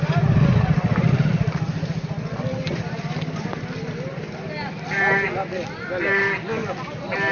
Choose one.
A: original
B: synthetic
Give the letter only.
A